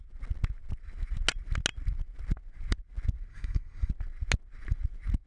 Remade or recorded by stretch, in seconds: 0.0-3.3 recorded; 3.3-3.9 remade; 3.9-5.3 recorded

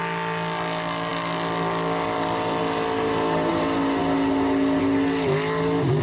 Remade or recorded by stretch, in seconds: 0.0-6.0 recorded

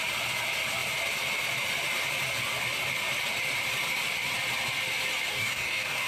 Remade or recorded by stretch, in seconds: 0.0-5.3 recorded; 5.3-6.1 remade

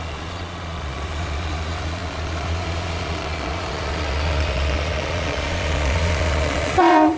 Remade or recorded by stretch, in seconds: 0.0-7.2 remade

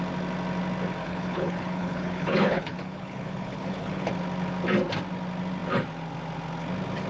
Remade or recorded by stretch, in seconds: 0.0-1.0 recorded; 1.0-4.1 remade; 4.1-7.1 recorded

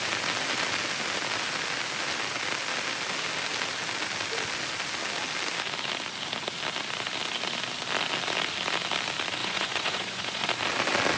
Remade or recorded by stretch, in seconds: 0.0-9.4 recorded; 9.4-10.5 remade; 10.5-11.2 recorded

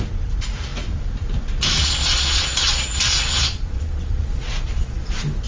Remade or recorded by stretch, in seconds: 0.0-1.8 recorded; 1.8-5.1 remade; 5.1-5.5 recorded